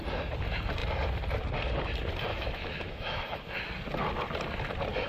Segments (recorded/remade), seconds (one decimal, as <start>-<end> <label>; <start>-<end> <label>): 0.0-2.3 recorded; 2.3-3.5 remade; 3.5-5.1 recorded